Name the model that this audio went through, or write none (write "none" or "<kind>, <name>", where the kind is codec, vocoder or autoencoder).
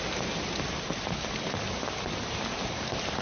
none